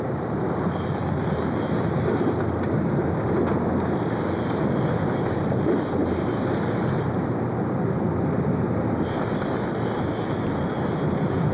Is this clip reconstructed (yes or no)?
no